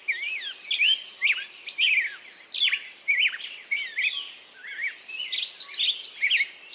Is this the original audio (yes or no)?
yes